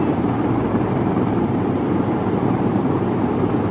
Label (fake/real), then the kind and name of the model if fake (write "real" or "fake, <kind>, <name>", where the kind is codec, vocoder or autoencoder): fake, vocoder, BigVGAN v2